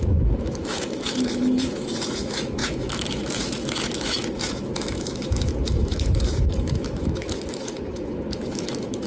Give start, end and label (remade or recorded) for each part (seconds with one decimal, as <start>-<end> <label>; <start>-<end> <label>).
0.0-9.1 remade